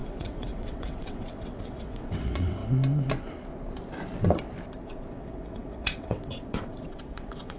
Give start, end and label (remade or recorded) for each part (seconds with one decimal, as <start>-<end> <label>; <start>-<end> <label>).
0.0-2.6 remade; 2.6-5.1 recorded; 5.1-7.6 remade